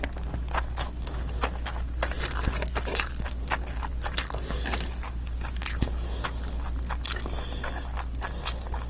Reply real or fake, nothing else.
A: real